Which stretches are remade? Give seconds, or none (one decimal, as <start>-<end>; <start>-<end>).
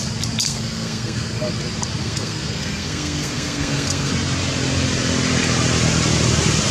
0.4-1.5; 2.0-4.1